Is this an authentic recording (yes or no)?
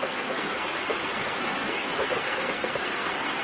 no